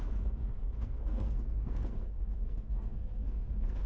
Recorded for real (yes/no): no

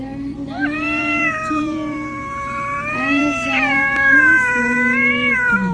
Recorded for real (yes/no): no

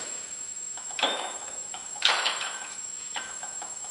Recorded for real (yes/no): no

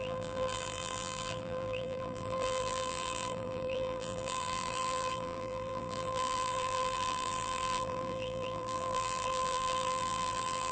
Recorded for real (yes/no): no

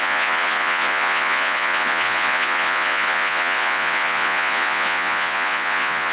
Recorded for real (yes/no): no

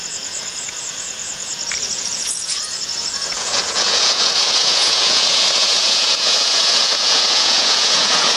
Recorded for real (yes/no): no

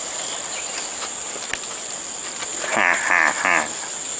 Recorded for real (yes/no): yes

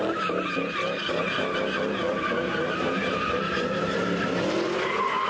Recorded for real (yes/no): yes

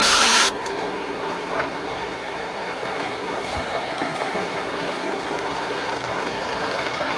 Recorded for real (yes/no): no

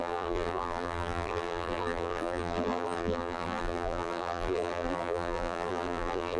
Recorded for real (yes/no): no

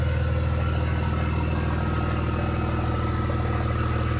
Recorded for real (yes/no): yes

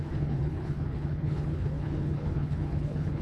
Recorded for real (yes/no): no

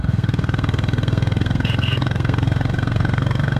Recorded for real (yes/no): no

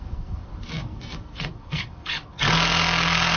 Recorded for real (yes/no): no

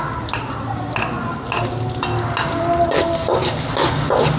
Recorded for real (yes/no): yes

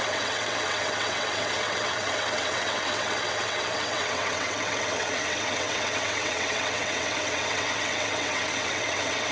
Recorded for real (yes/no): no